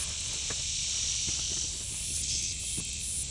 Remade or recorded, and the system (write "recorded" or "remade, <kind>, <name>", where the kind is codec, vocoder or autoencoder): recorded